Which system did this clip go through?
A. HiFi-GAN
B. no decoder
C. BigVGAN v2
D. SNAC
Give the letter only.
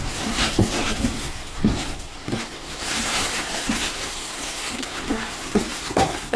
D